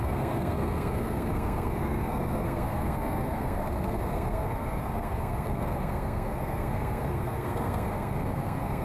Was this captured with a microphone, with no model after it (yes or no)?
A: no